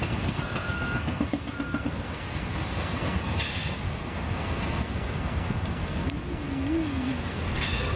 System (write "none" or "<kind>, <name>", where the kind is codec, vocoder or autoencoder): codec, SNAC